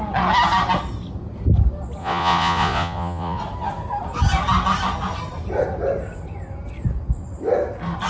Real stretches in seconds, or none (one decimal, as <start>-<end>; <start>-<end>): 0.0-2.0; 3.4-8.1